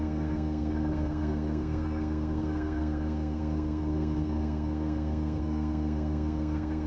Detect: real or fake fake